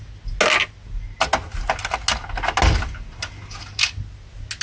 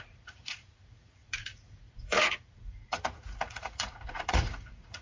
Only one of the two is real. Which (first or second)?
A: first